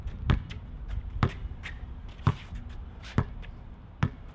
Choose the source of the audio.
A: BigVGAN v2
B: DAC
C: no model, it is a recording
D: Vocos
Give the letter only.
C